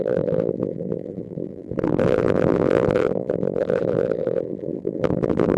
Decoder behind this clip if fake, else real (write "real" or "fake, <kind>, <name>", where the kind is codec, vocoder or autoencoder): fake, vocoder, BigVGAN v2